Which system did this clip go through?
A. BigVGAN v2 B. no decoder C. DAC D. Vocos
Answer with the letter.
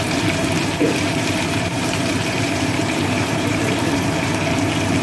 A